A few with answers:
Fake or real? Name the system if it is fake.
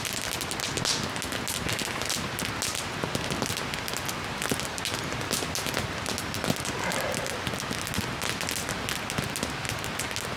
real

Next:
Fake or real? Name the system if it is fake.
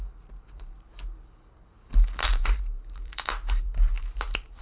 fake, vocoder, BigVGAN v2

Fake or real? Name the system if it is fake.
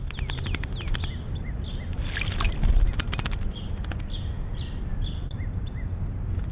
real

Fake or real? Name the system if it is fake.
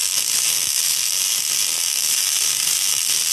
real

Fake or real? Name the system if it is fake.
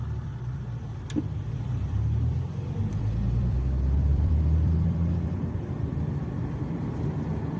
fake, vocoder, BigVGAN v2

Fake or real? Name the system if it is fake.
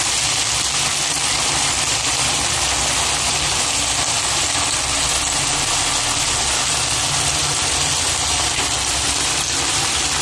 real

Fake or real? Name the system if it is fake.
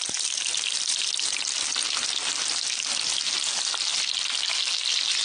real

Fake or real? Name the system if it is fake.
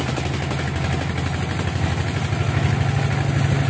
real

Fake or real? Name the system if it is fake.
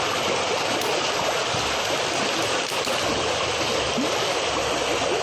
real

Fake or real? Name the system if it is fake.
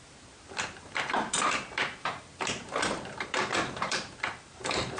fake, vocoder, BigVGAN v2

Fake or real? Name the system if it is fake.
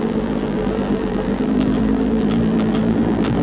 fake, vocoder, BigVGAN v2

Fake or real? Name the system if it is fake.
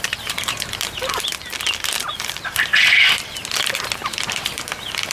fake, vocoder, BigVGAN v2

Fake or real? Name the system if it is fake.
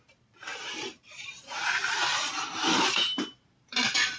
fake, vocoder, BigVGAN v2